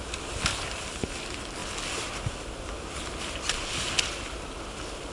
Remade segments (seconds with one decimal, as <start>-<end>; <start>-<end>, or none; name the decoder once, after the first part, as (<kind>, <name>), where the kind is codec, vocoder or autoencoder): 0.5-1.1 (vocoder, BigVGAN v2)